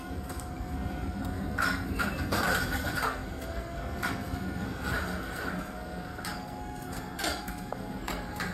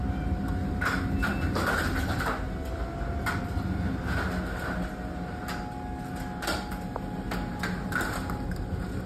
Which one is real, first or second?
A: second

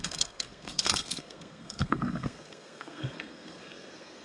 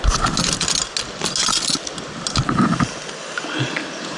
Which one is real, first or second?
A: second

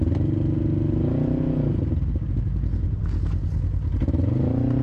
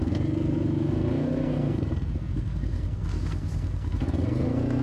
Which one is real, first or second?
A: first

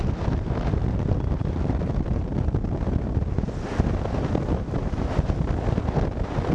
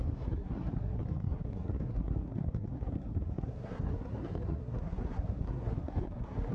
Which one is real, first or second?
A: first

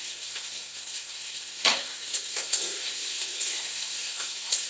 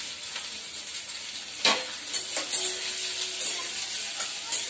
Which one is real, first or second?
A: second